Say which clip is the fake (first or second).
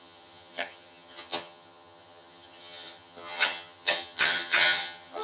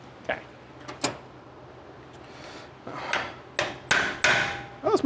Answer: first